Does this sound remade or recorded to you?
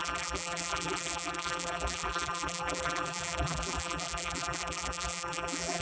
remade